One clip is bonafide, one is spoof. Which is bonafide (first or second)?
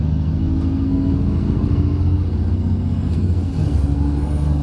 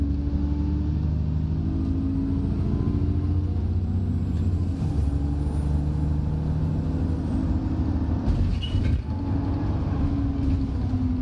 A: second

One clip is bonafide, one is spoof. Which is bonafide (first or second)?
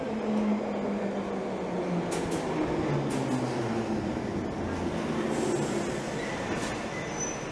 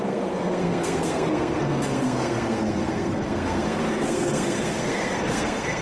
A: first